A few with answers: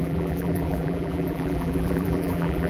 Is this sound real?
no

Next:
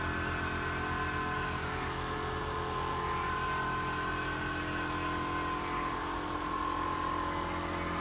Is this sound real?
yes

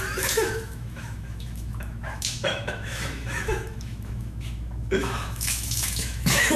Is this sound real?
no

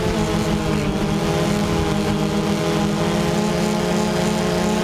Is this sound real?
yes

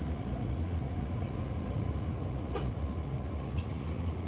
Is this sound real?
no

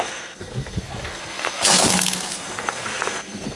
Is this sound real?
no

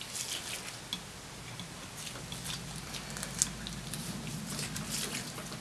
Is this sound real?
yes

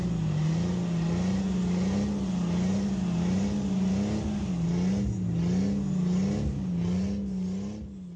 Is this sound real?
yes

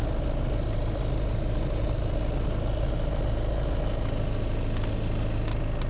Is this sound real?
yes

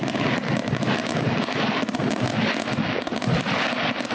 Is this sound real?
yes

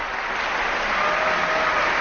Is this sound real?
yes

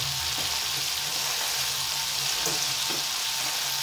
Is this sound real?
yes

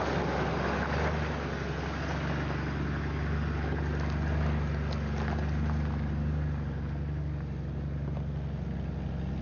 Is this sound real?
yes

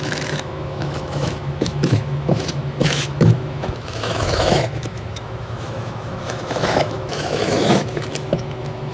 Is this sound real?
no